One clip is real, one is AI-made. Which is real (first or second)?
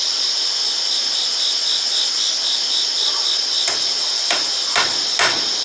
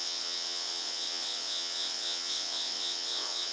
first